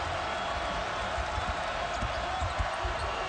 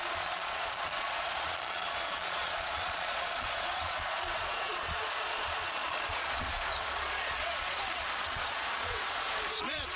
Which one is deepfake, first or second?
second